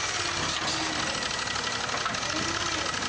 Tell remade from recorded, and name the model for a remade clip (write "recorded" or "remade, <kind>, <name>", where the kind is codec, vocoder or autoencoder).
recorded